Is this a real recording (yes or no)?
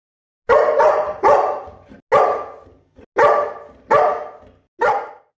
yes